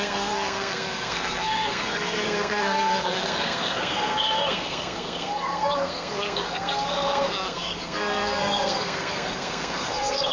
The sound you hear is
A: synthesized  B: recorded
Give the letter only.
A